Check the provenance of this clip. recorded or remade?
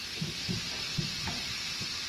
recorded